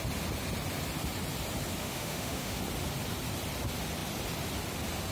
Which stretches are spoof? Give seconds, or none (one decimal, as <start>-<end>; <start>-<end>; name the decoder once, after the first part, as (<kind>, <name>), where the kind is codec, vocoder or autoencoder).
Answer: 1.8-2.6 (autoencoder, DAC-VAE)